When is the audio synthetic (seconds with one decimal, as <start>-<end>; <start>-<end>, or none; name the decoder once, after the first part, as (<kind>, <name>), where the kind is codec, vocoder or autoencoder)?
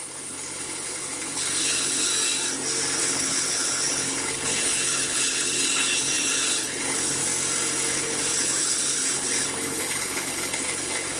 0.0-2.1 (codec, HILCodec); 3.0-7.2; 7.9-11.2